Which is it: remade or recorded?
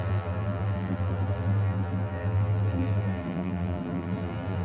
remade